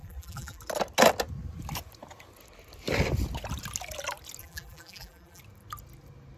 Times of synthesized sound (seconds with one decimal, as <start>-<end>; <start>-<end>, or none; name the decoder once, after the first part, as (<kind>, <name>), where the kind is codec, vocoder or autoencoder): 0.0-0.6 (vocoder, BigVGAN v2); 4.4-5.4